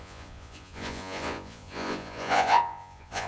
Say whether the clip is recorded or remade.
remade